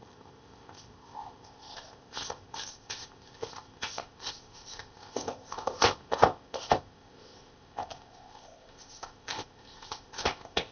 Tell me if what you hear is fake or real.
fake